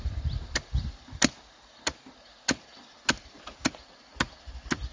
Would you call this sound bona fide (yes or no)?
yes